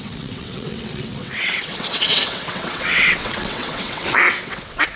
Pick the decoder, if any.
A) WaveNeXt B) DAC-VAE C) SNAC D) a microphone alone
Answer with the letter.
A